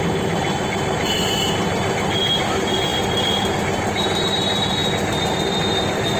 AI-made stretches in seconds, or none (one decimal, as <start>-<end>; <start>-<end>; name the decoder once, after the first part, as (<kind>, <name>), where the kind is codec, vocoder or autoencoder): none